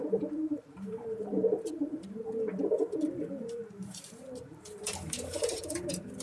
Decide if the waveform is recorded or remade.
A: remade